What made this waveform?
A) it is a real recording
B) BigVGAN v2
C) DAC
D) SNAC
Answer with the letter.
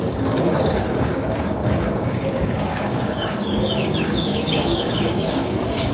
C